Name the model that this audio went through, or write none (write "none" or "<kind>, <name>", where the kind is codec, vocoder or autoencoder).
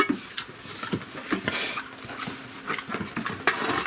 none